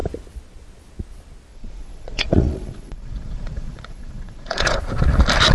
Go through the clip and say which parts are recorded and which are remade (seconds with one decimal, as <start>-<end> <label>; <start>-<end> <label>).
0.0-1.5 recorded; 1.5-4.8 remade; 4.8-5.5 recorded